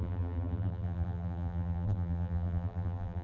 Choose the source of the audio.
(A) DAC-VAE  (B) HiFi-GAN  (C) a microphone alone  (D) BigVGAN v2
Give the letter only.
D